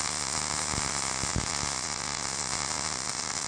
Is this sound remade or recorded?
recorded